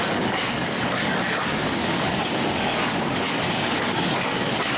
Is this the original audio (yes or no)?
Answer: no